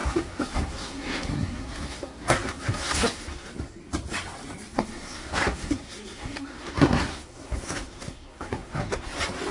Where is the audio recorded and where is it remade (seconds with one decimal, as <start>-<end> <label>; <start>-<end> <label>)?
0.0-3.5 remade; 3.5-4.7 recorded; 4.7-9.1 remade; 9.1-9.5 recorded